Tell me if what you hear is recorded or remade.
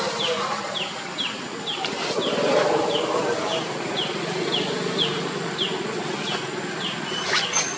recorded